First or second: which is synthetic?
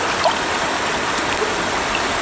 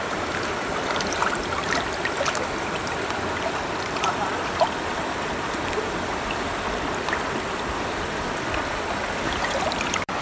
second